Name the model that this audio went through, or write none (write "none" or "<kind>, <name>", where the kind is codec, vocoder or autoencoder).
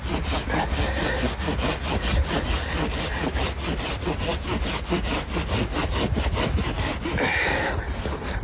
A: none